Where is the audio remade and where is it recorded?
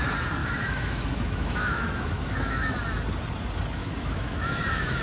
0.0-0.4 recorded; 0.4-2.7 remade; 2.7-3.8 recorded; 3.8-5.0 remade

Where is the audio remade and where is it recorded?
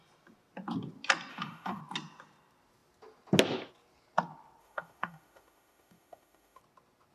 0.0-1.3 recorded; 1.3-1.8 remade; 1.8-4.6 recorded; 4.6-6.6 remade; 6.6-7.1 recorded